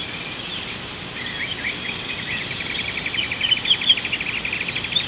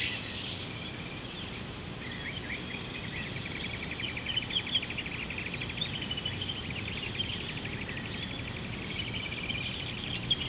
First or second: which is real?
first